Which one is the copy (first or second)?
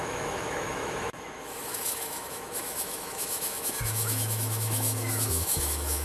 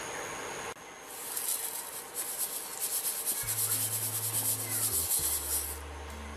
first